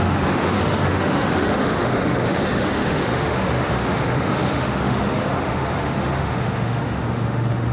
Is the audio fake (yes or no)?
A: yes